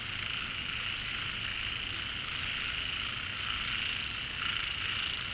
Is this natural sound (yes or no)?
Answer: yes